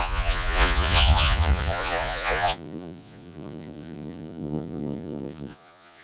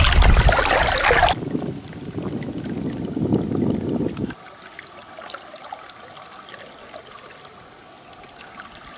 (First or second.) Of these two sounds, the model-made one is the first